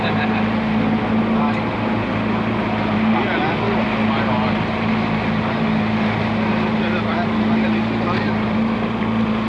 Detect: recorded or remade recorded